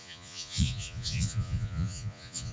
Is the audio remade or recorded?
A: remade